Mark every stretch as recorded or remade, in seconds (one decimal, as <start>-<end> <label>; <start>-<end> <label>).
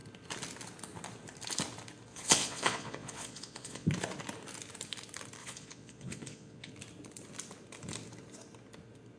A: 0.0-2.1 recorded; 2.1-3.9 remade; 3.9-5.4 recorded; 5.4-6.7 remade; 6.7-9.2 recorded